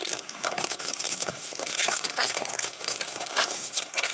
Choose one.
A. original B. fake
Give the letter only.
B